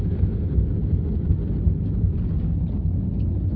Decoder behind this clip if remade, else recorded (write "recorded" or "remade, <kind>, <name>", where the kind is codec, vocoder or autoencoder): recorded